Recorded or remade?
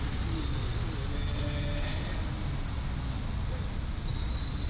recorded